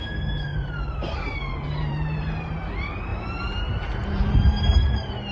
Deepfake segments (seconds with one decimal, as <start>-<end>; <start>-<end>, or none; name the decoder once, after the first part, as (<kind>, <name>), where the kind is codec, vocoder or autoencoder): 0.5-2.5 (vocoder, BigVGAN v2); 3.1-4.2